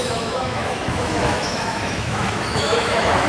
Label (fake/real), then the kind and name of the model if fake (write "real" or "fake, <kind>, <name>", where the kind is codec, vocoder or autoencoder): fake, autoencoder, DAC-VAE